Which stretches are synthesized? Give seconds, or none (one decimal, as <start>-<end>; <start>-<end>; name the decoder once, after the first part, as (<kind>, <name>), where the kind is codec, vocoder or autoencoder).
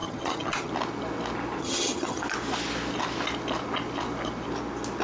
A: 0.0-0.7 (vocoder, HiFi-GAN); 1.6-2.2